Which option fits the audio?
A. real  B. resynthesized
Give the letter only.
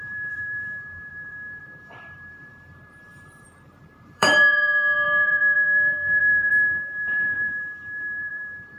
B